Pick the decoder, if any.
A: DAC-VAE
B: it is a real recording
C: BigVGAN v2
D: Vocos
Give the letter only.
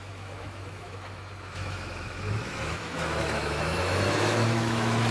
A